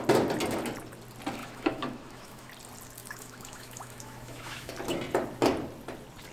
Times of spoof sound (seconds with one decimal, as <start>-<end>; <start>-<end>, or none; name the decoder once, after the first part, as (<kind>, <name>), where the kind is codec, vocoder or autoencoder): 1.4-2.5 (autoencoder, DAC-VAE); 3.0-4.7

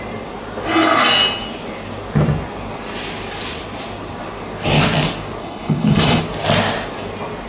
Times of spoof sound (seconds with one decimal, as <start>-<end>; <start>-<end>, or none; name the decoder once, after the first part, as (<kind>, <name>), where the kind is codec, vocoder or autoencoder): 5.4-6.2 (codec, HILCodec)